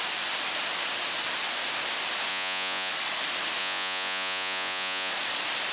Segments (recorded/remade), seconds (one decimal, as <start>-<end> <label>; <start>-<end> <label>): 0.0-2.3 recorded; 2.3-2.9 remade; 2.9-3.6 recorded; 3.6-5.1 remade; 5.1-5.7 recorded